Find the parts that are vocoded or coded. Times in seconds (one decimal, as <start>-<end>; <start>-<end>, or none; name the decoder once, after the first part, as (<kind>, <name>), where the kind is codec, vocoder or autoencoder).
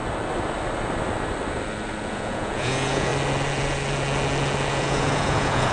2.1-3.1 (vocoder, Vocos); 4.7-5.7